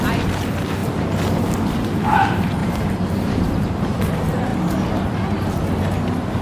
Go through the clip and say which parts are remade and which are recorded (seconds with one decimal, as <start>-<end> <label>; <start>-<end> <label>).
0.0-2.6 recorded; 2.6-4.1 remade; 4.1-6.4 recorded